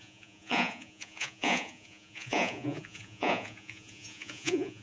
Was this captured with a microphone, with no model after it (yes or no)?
no